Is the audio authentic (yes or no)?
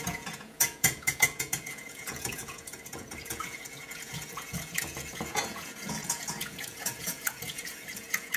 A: no